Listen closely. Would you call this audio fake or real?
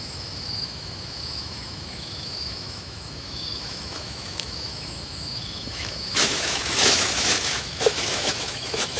fake